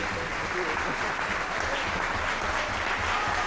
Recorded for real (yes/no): yes